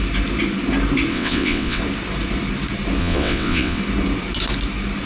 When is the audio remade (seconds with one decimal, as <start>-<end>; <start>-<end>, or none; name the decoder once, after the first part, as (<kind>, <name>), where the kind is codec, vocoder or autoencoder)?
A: 1.1-1.8 (vocoder, WaveNeXt); 3.0-3.8